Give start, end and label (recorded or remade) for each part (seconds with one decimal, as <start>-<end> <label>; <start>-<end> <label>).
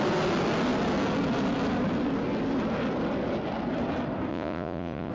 0.0-4.3 recorded; 4.3-5.1 remade